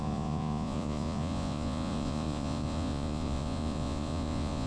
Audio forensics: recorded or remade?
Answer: remade